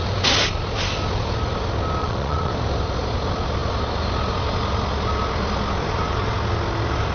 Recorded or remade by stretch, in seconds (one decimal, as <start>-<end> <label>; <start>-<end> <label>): 0.0-2.0 recorded; 2.0-2.5 remade; 2.5-7.1 recorded